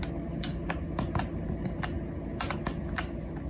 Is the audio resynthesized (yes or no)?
no